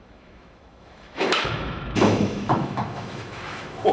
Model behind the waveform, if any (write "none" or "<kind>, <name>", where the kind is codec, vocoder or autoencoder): autoencoder, DAC-VAE